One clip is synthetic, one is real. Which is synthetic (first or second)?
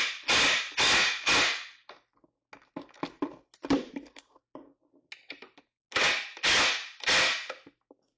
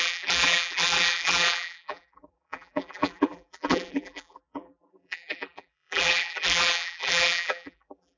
second